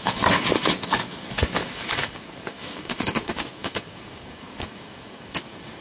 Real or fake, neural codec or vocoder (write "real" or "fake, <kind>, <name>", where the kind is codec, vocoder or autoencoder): fake, codec, DAC